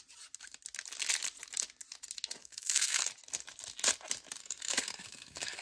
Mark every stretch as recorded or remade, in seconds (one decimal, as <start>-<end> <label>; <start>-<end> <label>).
0.0-2.4 recorded; 2.4-3.1 remade; 3.1-4.4 recorded; 4.4-5.6 remade